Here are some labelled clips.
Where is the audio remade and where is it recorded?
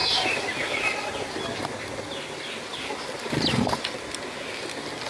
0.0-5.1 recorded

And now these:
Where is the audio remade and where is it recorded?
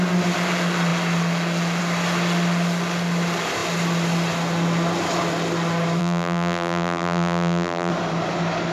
0.0-6.0 recorded; 6.0-7.9 remade; 7.9-8.7 recorded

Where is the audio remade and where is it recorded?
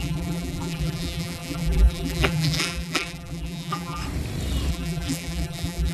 0.0-4.0 remade; 4.0-4.7 recorded; 4.7-5.9 remade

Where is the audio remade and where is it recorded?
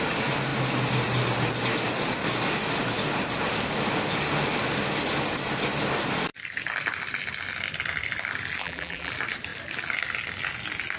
0.0-8.6 recorded; 8.6-9.1 remade; 9.1-11.0 recorded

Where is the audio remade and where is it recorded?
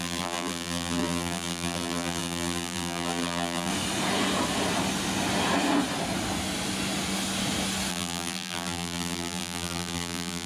0.0-3.7 remade; 3.7-7.9 recorded; 7.9-10.5 remade